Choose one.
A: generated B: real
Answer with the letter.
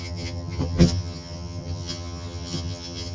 A